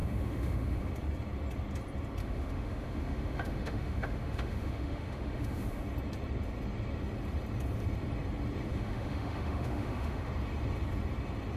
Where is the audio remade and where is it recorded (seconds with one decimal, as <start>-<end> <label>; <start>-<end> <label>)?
0.0-0.9 remade; 0.9-2.2 recorded; 2.2-5.8 remade; 5.8-8.7 recorded; 8.7-10.3 remade; 10.3-11.6 recorded